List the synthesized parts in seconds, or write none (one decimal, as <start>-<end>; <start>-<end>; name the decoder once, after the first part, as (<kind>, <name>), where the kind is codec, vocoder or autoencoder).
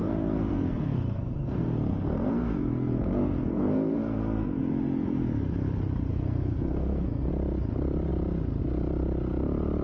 0.0-4.6 (codec, SNAC); 6.1-7.3